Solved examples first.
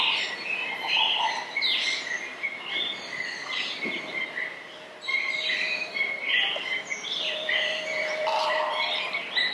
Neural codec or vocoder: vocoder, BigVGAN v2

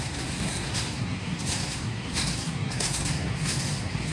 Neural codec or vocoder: codec, SNAC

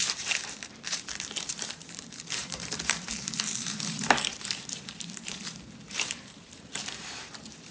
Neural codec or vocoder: vocoder, BigVGAN v2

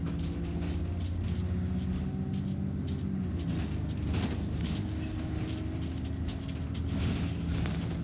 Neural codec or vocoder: none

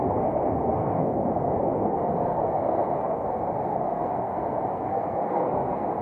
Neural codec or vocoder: codec, SNAC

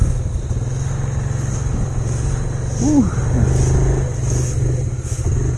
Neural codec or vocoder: none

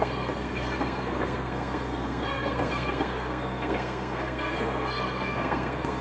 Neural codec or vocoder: codec, SNAC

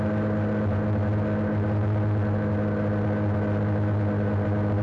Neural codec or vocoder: none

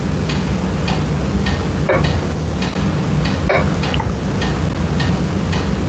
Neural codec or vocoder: none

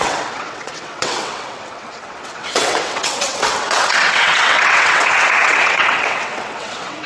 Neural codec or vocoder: vocoder, WaveNeXt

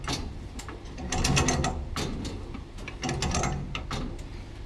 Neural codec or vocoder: none